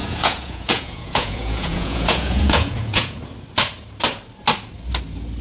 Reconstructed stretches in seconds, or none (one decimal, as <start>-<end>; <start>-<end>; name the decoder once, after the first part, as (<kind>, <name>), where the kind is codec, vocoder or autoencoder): 0.0-3.2 (vocoder, Vocos)